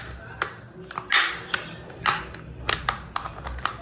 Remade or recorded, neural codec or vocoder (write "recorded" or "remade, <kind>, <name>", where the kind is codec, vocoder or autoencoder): recorded